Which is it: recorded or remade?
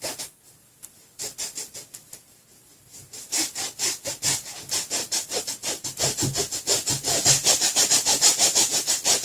recorded